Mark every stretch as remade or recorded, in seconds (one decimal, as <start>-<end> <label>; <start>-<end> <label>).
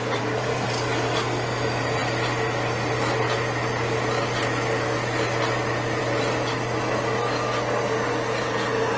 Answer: 0.0-0.6 remade; 0.6-9.0 recorded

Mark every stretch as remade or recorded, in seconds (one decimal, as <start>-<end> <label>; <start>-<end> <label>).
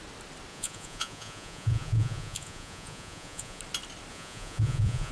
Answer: 0.0-0.5 recorded; 0.5-3.6 remade; 3.6-4.1 recorded; 4.1-5.1 remade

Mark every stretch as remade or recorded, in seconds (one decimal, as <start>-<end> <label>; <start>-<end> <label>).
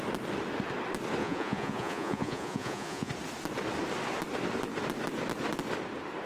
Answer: 0.0-1.2 recorded; 1.2-3.1 remade; 3.1-6.3 recorded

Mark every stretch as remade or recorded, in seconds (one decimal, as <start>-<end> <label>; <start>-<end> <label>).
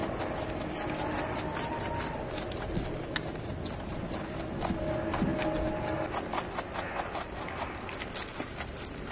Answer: 0.0-9.1 recorded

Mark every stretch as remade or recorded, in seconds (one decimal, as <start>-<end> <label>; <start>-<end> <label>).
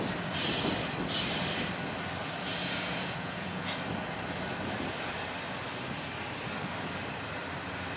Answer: 0.0-2.6 recorded; 2.6-3.8 remade; 3.8-8.0 recorded